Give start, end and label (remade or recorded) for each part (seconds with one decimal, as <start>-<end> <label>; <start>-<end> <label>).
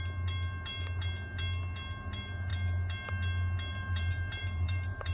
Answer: 0.0-3.7 recorded; 3.7-5.1 remade